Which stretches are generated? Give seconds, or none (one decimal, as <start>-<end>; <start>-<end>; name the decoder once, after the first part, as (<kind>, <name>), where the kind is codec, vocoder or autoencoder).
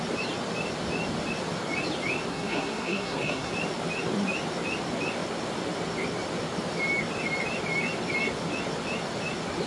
2.3-3.5 (codec, SNAC)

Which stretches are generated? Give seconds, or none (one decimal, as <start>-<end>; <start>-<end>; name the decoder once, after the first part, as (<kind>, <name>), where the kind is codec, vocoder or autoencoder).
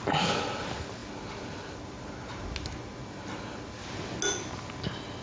none